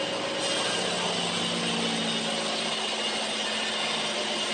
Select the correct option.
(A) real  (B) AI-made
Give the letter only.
A